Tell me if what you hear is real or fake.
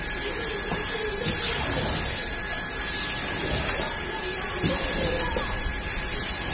fake